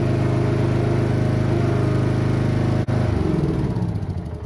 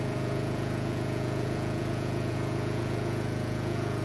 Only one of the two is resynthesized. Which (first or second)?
second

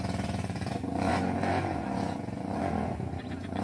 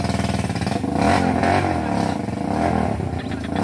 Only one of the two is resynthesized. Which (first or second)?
first